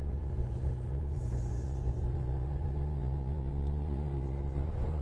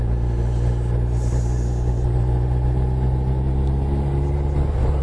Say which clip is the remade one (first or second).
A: first